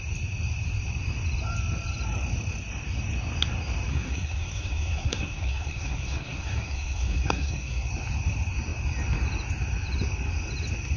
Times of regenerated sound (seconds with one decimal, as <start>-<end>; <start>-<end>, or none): 3.9-7.9